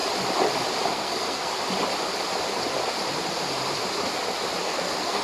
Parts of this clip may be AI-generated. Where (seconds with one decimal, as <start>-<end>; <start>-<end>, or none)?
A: 0.9-1.5; 4.6-5.2